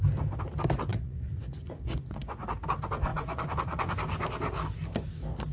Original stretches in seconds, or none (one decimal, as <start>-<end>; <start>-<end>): 0.0-0.9; 2.4-3.1; 3.9-5.5